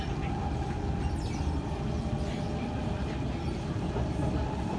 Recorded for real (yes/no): yes